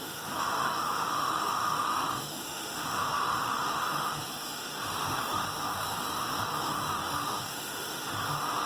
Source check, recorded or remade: remade